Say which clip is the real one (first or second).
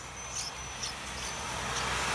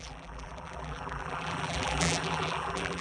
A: first